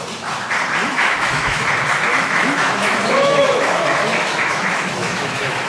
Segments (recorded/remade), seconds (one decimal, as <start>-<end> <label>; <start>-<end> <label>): 0.0-0.8 recorded; 0.8-1.6 remade; 1.6-2.1 recorded; 2.1-5.7 remade